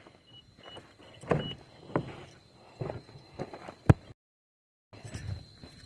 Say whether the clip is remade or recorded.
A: recorded